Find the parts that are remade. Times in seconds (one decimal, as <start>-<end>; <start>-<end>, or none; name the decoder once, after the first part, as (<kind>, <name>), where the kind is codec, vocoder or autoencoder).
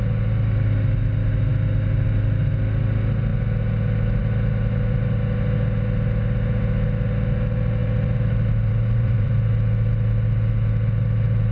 7.8-9.3 (vocoder, BigVGAN v2)